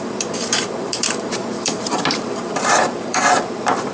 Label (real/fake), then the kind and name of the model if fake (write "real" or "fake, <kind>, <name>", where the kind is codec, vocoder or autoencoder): fake, vocoder, BigVGAN v2